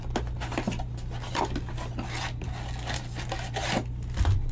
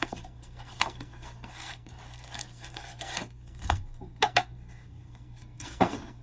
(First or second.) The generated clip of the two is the second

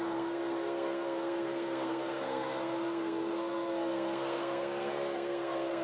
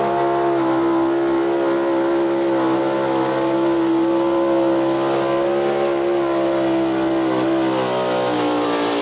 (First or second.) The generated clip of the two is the first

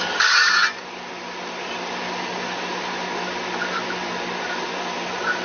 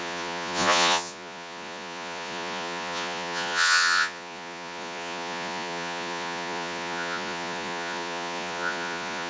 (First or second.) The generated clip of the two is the second